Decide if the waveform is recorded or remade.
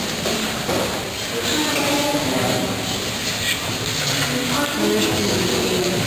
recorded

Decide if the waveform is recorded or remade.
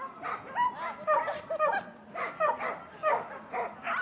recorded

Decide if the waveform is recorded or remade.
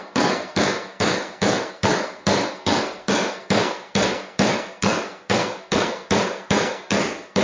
remade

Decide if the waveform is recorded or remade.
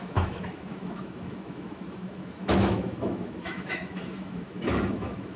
remade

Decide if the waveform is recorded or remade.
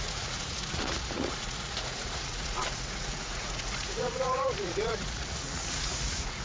remade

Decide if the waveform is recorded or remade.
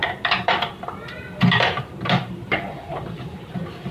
remade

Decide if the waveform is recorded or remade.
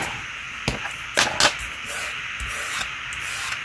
recorded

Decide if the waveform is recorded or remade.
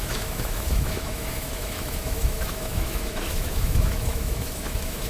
remade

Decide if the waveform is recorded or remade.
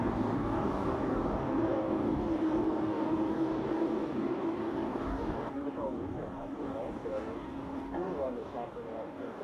remade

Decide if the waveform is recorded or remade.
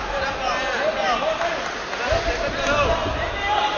recorded